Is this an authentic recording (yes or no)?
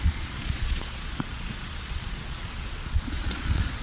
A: no